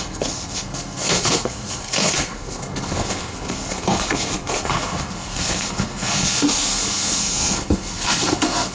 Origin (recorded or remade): remade